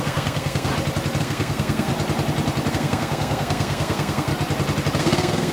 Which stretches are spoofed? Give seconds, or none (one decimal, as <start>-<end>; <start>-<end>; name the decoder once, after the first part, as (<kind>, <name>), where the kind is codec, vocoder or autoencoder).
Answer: 0.0-0.7 (codec, SNAC); 1.2-1.9; 2.7-4.3; 5.0-5.5